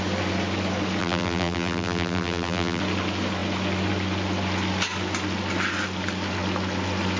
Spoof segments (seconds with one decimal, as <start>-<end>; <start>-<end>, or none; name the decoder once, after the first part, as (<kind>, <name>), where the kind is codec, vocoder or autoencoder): 1.0-2.8 (vocoder, BigVGAN v2)